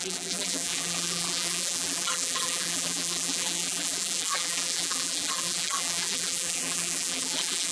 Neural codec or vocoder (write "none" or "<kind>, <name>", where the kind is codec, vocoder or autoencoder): vocoder, BigVGAN v2